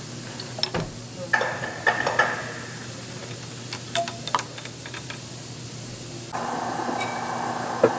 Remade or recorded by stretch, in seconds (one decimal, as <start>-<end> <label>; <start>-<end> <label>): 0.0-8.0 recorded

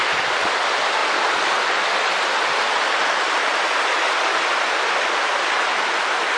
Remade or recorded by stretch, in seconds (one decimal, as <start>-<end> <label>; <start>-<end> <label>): 0.0-6.4 recorded

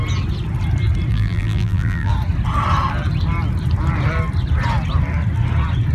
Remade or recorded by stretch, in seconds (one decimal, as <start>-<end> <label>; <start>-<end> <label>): 0.0-1.1 recorded; 1.1-2.1 remade; 2.1-5.9 recorded